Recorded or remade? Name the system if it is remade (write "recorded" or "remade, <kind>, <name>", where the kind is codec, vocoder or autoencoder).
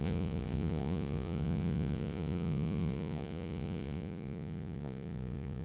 remade, vocoder, Vocos